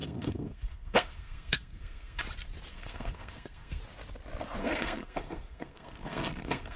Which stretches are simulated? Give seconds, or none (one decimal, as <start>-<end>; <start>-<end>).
0.0-2.2; 2.7-3.8; 4.6-6.8